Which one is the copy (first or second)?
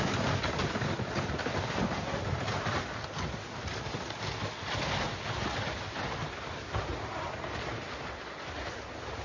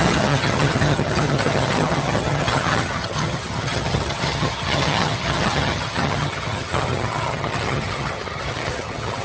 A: second